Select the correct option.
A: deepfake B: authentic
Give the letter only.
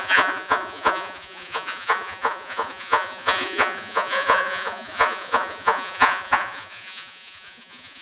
A